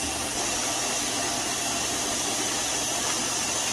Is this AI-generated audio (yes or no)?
no